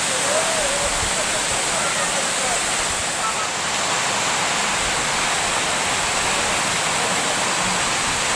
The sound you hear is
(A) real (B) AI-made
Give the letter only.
A